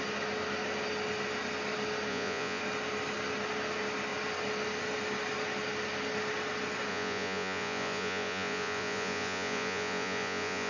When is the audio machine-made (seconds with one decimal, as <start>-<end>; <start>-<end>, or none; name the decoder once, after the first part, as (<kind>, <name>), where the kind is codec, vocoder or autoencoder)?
2.1-2.6 (vocoder, Vocos); 6.9-10.7